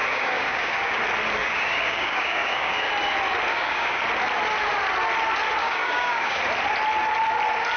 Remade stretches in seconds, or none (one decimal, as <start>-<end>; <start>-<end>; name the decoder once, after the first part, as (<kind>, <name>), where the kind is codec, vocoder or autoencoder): 0.0-1.0 (codec, DAC); 1.4-2.9; 3.5-4.0; 5.6-6.4